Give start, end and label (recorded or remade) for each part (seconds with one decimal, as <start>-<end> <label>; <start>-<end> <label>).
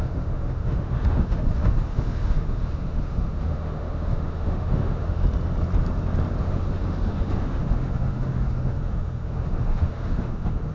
0.0-5.2 remade; 5.2-6.4 recorded; 6.4-10.7 remade